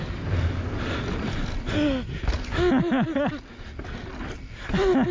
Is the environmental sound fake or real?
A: real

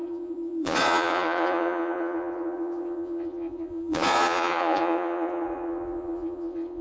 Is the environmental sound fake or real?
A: fake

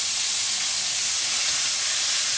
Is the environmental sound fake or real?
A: fake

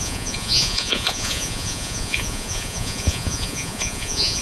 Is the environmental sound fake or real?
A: fake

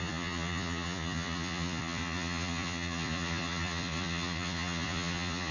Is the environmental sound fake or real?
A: fake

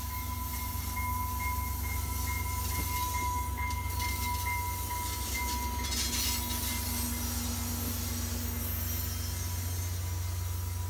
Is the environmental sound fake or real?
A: real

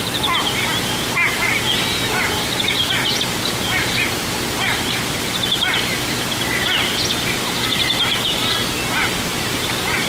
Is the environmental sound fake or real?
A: real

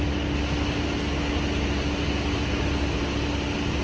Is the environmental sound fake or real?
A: real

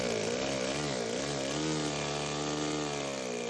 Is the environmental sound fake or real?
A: real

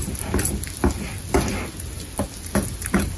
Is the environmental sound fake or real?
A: real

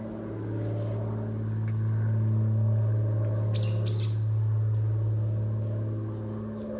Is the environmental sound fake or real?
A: real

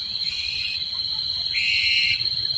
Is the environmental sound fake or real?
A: fake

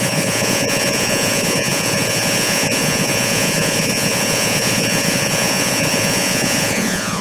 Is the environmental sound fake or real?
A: fake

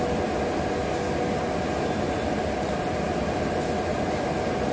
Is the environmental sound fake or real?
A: real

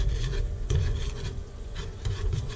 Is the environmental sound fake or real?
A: fake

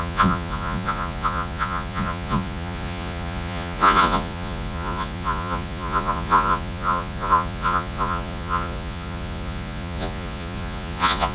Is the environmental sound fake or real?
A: fake